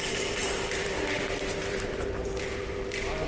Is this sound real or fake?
real